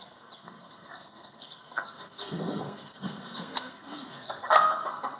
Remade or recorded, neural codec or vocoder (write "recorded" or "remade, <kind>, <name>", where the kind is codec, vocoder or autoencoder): remade, codec, SNAC